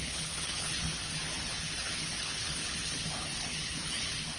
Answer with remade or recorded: remade